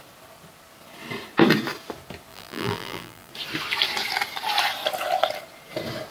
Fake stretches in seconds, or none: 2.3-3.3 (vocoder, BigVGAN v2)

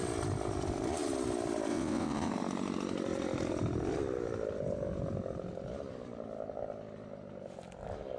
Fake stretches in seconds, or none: 1.7-2.3 (vocoder, WaveNeXt)

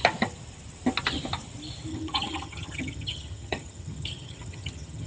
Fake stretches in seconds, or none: 1.9-5.1 (vocoder, HiFi-GAN)

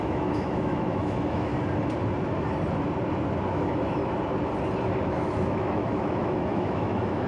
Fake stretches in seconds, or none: 0.0-1.5 (autoencoder, DAC-VAE); 3.4-4.0; 5.1-7.3

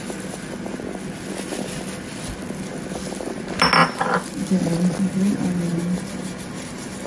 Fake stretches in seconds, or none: 5.7-7.1 (vocoder, BigVGAN v2)